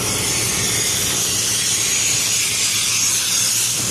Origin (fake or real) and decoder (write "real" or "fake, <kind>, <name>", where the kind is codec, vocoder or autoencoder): real